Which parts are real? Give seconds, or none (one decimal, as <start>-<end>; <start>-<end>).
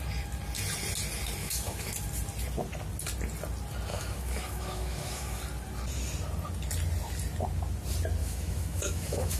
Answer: 0.0-1.4; 1.9-3.9; 5.4-8.2